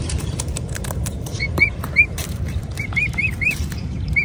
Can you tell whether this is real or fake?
fake